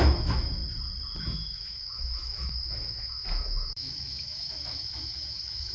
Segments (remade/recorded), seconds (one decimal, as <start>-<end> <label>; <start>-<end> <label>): 0.0-0.6 remade; 0.6-1.2 recorded; 1.2-5.7 remade